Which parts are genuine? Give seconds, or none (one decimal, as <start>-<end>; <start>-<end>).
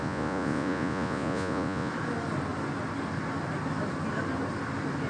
1.9-5.1